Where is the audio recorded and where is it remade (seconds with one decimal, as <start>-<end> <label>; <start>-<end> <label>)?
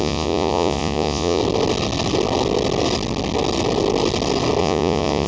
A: 0.0-1.4 remade; 1.4-4.6 recorded; 4.6-5.3 remade